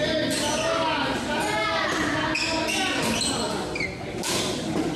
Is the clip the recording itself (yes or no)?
yes